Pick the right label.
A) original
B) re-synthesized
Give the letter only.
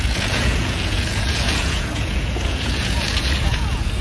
B